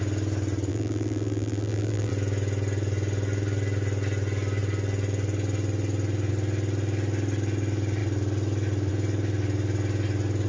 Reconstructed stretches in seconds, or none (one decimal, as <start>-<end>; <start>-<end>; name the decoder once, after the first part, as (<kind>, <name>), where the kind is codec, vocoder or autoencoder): 0.7-2.1 (vocoder, BigVGAN v2)